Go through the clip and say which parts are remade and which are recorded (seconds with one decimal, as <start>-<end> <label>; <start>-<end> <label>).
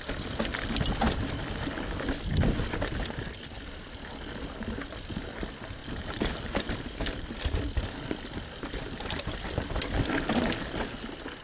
0.0-5.8 recorded; 5.8-7.8 remade; 7.8-11.4 recorded